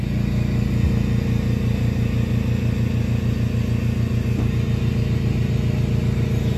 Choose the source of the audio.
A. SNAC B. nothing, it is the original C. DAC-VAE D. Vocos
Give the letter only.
B